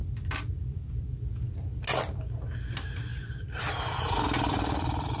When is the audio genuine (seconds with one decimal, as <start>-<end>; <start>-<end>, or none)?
0.0-5.2